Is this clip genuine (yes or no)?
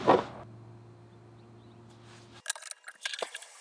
yes